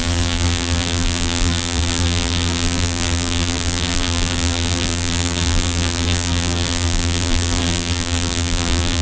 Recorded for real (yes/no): no